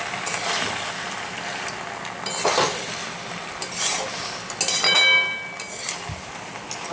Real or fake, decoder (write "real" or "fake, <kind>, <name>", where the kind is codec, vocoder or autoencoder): real